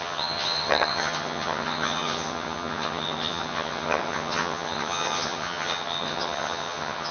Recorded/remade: remade